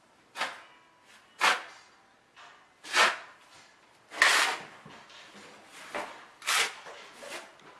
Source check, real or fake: real